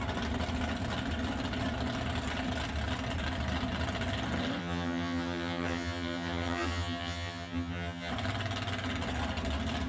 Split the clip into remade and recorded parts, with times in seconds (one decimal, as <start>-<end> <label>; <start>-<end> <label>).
0.0-4.6 recorded; 4.6-8.1 remade; 8.1-9.9 recorded